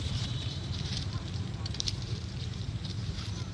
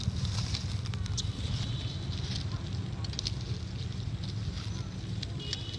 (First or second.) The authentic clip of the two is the second